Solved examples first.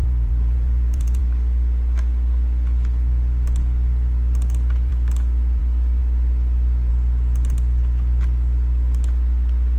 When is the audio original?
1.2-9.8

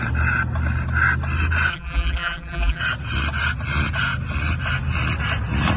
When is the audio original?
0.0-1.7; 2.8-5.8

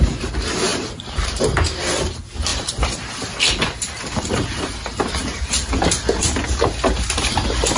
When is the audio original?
0.0-0.7; 1.4-2.5; 5.7-7.8

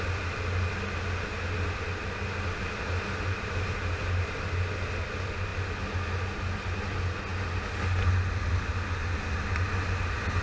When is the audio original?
0.0-10.4

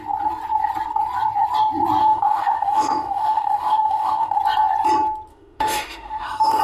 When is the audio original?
0.0-2.0; 4.4-5.3

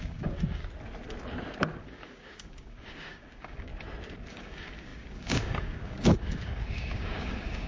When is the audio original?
0.6-1.8; 3.7-4.3